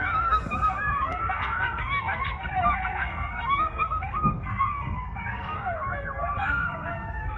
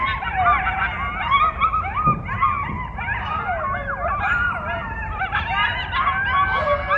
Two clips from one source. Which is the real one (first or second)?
second